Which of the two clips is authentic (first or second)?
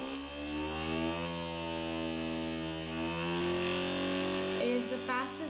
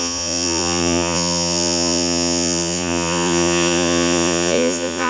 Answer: first